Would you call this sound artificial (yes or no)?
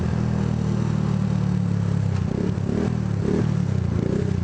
no